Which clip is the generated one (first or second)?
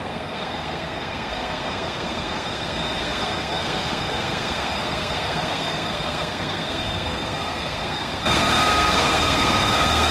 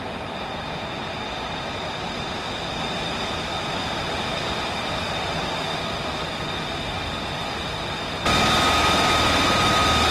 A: first